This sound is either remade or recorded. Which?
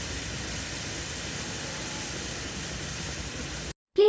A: recorded